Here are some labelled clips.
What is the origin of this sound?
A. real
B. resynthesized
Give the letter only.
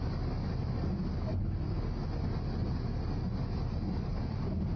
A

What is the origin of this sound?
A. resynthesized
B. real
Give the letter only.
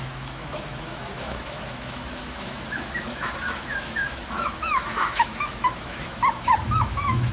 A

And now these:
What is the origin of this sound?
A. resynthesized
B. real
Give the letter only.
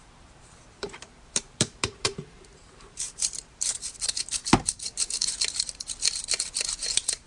A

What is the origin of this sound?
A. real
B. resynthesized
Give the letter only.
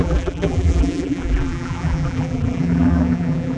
B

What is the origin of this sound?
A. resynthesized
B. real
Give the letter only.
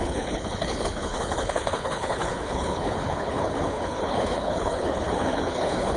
A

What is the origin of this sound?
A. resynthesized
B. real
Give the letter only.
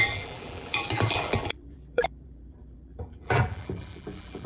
A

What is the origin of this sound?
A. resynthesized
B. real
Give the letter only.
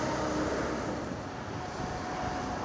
B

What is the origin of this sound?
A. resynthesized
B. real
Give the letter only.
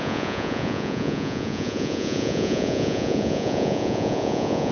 A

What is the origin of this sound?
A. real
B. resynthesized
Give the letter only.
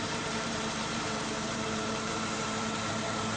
B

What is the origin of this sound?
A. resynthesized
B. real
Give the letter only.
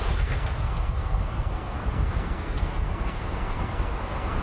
A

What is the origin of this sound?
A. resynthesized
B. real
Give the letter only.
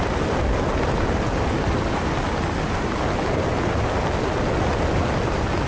B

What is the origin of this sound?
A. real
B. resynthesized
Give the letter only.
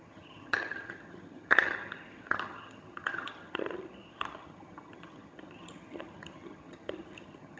B